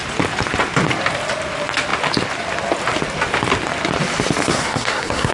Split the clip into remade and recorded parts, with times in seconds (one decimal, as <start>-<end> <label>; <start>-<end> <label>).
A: 0.0-4.5 recorded; 4.5-5.3 remade

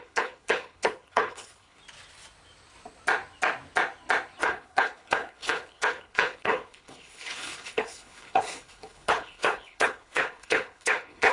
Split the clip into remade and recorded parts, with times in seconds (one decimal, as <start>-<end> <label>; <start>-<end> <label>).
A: 0.0-1.8 remade; 1.8-4.4 recorded; 4.4-11.3 remade

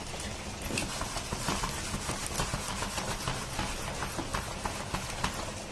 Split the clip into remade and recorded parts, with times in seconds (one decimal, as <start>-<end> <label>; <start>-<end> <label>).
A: 0.0-5.7 recorded

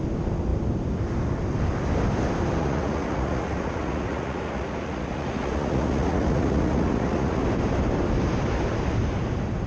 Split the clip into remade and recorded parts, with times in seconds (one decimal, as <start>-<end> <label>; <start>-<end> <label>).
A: 0.0-2.6 recorded; 2.6-7.4 remade; 7.4-9.7 recorded

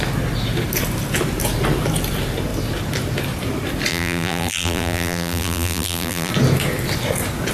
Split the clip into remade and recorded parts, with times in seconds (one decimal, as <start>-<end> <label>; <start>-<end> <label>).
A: 0.0-3.9 recorded; 3.9-6.3 remade; 6.3-7.5 recorded

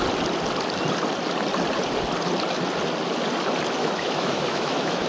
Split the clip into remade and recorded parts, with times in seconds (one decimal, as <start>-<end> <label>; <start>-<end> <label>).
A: 0.0-3.8 recorded; 3.8-5.1 remade

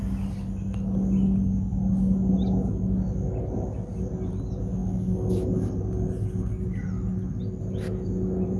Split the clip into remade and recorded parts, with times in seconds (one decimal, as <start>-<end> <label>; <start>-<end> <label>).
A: 0.0-8.6 recorded